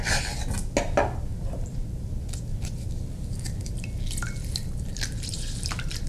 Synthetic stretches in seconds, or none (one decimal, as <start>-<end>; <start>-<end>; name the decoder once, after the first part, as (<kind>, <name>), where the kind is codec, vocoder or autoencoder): none